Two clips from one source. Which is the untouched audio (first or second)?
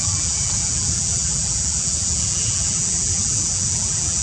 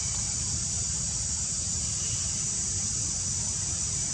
second